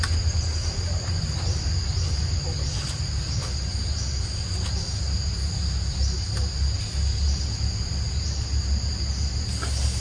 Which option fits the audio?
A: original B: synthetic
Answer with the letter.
A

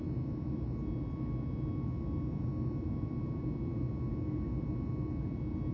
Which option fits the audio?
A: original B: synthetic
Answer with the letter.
A